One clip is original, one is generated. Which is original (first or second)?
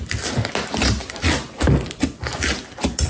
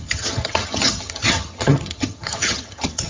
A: first